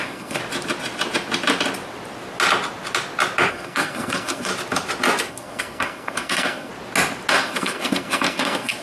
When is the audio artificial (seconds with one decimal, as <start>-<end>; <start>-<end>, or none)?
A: 0.0-0.4; 3.5-4.5; 5.3-6.7; 7.3-8.8